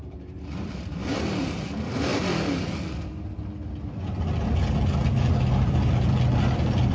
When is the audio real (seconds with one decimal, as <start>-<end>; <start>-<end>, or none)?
2.1-5.1